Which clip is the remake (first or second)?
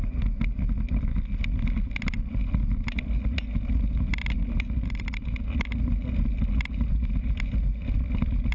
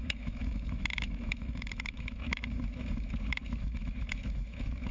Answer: second